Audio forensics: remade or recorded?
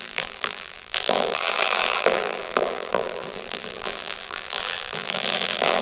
remade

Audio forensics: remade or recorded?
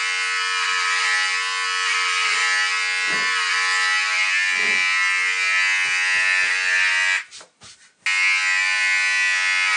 recorded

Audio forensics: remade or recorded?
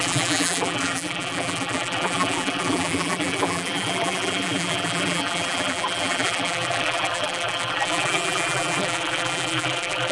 remade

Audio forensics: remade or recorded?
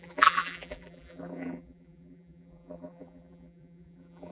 remade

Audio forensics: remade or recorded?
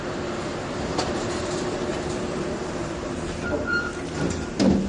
remade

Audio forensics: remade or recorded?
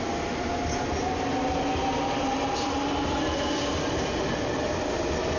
recorded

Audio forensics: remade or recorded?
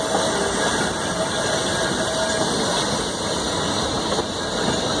recorded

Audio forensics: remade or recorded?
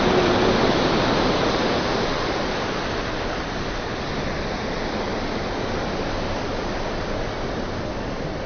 recorded